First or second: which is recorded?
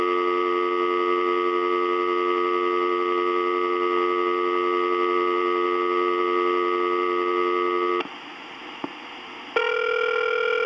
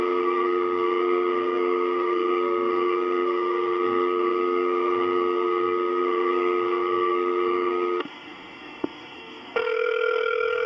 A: first